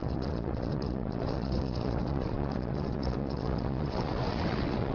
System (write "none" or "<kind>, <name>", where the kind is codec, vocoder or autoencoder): vocoder, WaveNeXt